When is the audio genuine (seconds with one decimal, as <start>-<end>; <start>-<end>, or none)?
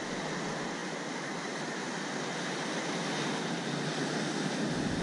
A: 0.0-5.0